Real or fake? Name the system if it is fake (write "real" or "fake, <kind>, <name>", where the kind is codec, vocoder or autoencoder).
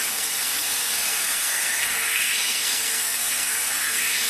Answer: fake, codec, SNAC